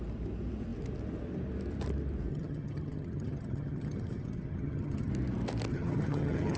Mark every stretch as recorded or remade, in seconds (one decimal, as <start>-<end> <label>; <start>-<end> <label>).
0.0-2.3 recorded; 2.3-5.1 remade; 5.1-5.7 recorded; 5.7-6.6 remade